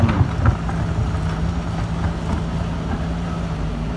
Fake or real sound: real